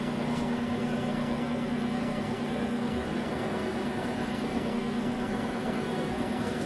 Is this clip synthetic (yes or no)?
yes